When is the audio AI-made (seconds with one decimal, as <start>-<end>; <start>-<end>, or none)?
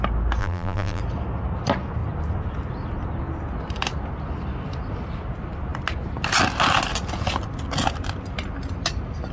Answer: 0.4-1.0